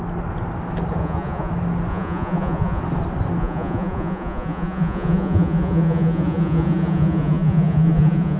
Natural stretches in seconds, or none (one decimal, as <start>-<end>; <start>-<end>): 0.0-1.0; 1.5-1.9; 2.8-3.4